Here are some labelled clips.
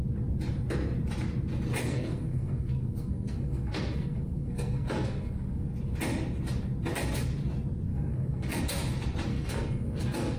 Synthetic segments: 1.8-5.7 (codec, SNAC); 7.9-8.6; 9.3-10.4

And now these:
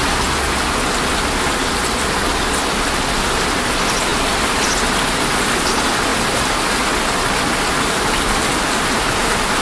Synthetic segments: none

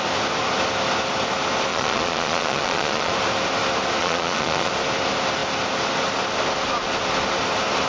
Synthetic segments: 1.7-3.1 (vocoder, Vocos); 4.0-4.7

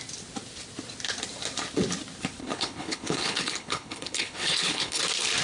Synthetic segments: 2.4-5.0 (codec, HILCodec)

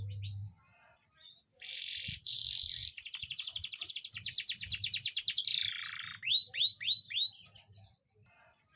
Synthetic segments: 1.5-2.4 (vocoder, BigVGAN v2); 2.8-3.9

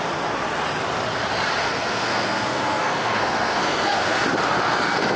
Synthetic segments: 1.6-4.2 (codec, SNAC)

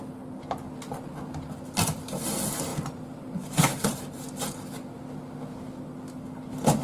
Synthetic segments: 2.7-4.2 (vocoder, BigVGAN v2)

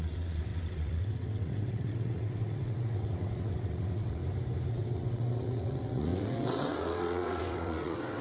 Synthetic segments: 0.0-4.2 (vocoder, WaveNeXt); 4.7-8.2